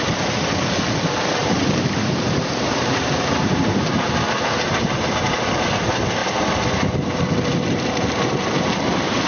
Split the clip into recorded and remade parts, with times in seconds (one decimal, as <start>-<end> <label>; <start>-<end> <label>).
0.0-1.4 recorded; 1.4-5.5 remade; 5.5-6.2 recorded; 6.2-8.9 remade; 8.9-9.3 recorded